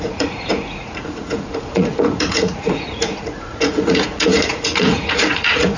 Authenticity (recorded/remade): remade